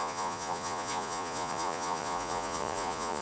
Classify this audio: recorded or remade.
remade